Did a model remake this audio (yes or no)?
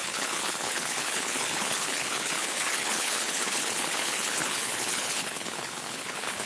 yes